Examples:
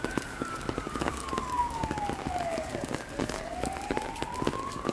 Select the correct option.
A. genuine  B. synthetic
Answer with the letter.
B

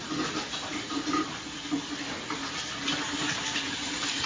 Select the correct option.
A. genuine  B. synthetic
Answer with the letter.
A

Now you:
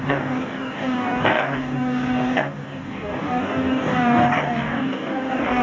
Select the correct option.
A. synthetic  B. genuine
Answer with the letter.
A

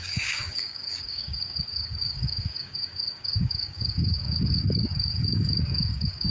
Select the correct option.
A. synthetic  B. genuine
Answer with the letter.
A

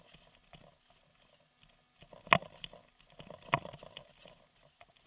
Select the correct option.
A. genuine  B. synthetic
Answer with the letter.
A